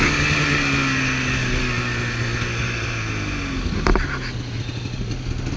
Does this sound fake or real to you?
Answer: real